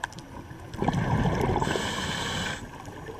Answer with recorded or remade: recorded